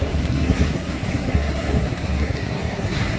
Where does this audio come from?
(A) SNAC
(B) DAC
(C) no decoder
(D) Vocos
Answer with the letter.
A